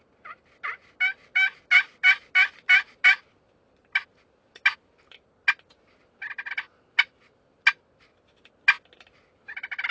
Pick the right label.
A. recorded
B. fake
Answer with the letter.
A